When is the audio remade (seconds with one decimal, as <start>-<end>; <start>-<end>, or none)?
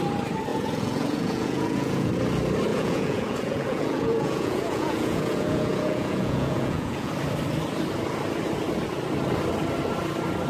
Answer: 0.5-2.1; 2.7-7.1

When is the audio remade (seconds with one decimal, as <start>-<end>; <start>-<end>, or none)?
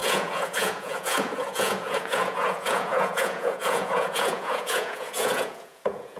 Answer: 0.0-6.2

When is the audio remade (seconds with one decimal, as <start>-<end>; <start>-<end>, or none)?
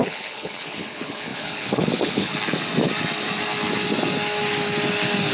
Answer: 0.0-2.3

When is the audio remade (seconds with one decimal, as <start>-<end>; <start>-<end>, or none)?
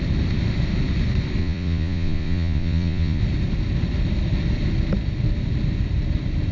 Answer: 1.4-3.2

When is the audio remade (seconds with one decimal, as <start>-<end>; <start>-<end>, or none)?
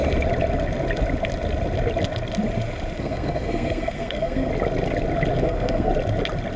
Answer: 3.0-4.5; 5.4-5.9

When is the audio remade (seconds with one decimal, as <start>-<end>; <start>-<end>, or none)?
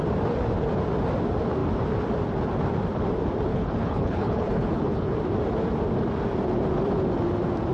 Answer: 3.5-5.2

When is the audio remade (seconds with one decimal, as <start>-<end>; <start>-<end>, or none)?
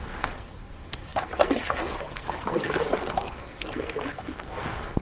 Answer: 0.0-5.0